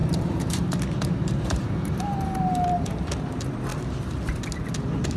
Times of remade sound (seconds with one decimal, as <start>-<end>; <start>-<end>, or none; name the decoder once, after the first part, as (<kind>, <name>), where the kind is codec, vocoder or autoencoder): 0.0-3.1 (vocoder, BigVGAN v2)